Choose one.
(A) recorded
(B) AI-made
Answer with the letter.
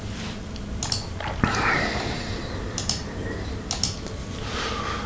A